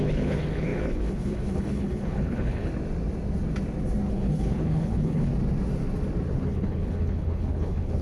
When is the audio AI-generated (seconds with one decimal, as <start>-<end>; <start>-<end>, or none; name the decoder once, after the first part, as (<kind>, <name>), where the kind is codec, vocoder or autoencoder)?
0.0-2.7 (codec, HILCodec); 4.1-5.3; 6.4-8.0